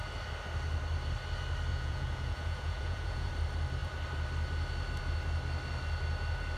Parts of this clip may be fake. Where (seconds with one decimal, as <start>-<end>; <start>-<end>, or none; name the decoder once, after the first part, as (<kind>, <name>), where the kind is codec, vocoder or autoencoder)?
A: 1.7-3.3 (vocoder, Vocos)

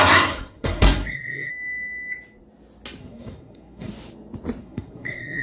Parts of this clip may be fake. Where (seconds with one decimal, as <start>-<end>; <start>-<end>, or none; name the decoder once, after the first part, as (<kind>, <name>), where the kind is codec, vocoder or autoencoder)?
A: 0.0-1.5 (codec, SNAC); 3.0-3.9; 4.6-5.4

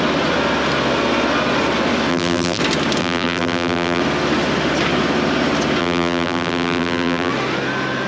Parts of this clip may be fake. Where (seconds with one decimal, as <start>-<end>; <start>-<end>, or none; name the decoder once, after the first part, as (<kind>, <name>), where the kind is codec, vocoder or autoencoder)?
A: 2.1-2.6 (vocoder, BigVGAN v2); 3.0-4.0; 5.8-7.3

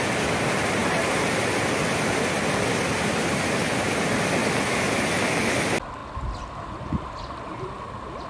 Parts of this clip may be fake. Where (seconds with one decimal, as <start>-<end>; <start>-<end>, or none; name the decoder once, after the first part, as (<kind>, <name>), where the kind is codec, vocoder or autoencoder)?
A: 0.8-2.9 (vocoder, BigVGAN v2); 4.4-5.0; 7.5-8.3

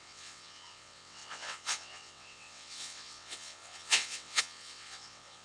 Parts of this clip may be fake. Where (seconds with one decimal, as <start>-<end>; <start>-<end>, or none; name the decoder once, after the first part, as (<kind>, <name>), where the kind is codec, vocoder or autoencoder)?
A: 0.0-5.4 (vocoder, WaveNeXt)

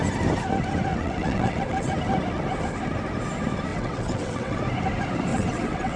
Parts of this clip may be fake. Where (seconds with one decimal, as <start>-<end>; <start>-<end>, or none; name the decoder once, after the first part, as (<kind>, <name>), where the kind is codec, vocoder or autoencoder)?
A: 0.9-1.9 (vocoder, WaveNeXt); 3.7-4.6; 5.3-6.0

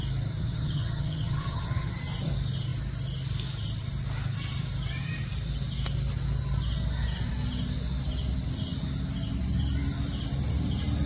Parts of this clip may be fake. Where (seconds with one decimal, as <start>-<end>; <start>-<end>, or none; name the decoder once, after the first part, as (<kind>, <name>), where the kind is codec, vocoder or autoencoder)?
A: 0.4-1.9 (vocoder, HiFi-GAN)

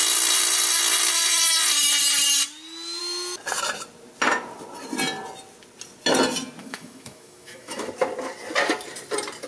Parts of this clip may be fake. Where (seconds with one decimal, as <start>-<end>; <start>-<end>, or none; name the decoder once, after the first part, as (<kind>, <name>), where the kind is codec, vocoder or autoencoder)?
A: 6.6-7.9 (autoencoder, DAC-VAE)